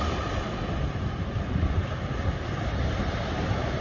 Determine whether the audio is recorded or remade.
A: recorded